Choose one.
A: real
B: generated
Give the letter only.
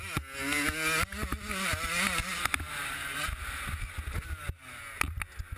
A